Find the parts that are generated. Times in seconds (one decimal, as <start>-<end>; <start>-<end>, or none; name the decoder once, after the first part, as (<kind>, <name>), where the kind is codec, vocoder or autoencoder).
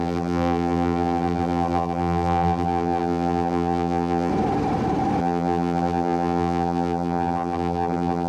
0.0-4.3 (vocoder, BigVGAN v2); 5.2-8.3